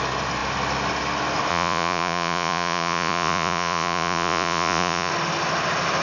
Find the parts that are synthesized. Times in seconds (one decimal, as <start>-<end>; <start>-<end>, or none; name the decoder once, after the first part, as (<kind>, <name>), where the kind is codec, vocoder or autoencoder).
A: 1.5-5.1 (vocoder, Vocos)

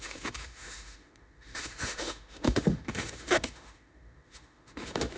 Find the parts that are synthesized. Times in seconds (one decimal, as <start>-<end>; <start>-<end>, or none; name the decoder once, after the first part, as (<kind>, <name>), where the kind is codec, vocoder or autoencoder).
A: 0.0-5.2 (autoencoder, DAC-VAE)

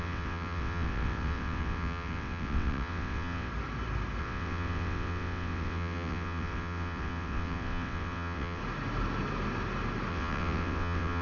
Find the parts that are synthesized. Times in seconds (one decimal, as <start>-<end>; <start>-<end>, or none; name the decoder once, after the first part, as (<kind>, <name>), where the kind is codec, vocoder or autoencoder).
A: 0.0-3.5 (vocoder, WaveNeXt); 4.2-8.6; 10.1-11.2

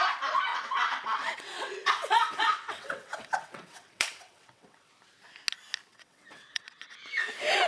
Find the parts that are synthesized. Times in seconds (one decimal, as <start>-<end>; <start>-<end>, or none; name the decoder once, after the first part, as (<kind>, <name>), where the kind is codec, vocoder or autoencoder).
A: 0.5-4.9 (vocoder, WaveNeXt); 5.9-6.8

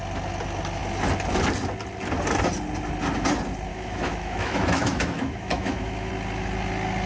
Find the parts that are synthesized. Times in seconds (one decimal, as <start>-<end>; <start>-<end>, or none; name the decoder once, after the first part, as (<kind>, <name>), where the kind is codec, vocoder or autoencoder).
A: 3.7-6.1 (autoencoder, DAC-VAE)